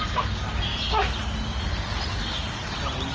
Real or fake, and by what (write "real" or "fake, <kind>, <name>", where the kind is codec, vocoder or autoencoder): real